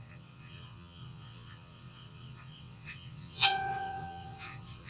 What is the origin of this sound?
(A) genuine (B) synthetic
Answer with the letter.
B